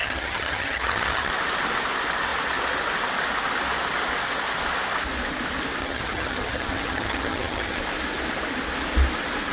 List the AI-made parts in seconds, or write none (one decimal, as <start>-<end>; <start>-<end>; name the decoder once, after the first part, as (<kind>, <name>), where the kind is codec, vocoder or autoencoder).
0.0-1.3 (vocoder, HiFi-GAN); 5.8-7.8